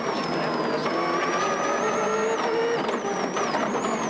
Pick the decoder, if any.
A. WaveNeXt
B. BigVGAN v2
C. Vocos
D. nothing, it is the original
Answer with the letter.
D